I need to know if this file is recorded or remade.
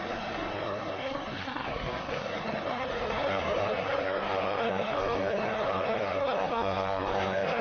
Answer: remade